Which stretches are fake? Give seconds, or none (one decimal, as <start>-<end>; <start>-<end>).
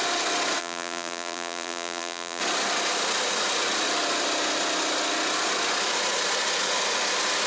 0.6-2.4